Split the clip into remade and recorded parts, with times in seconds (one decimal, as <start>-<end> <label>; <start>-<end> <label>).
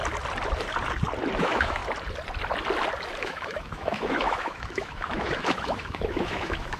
0.0-1.4 recorded; 1.4-1.8 remade; 1.8-3.2 recorded; 3.2-6.8 remade